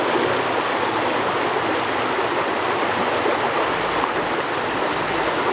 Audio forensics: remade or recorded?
recorded